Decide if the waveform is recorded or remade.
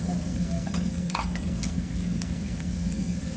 remade